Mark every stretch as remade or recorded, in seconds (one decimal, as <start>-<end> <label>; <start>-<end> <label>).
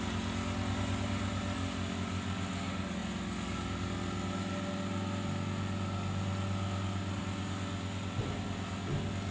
0.0-9.3 recorded